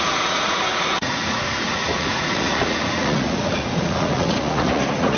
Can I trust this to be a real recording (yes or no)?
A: no